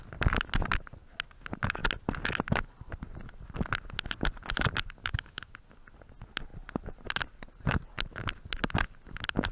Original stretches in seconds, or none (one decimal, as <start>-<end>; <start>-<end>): 0.0-5.0; 5.5-9.5

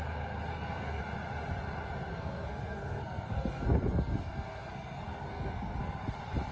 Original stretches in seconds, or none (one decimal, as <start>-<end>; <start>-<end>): 0.0-0.5; 1.0-2.1; 6.0-6.5

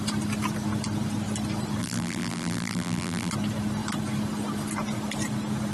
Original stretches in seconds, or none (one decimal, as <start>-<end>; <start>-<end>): 0.0-1.8; 3.3-5.7

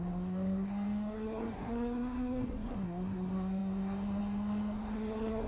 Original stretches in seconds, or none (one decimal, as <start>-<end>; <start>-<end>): none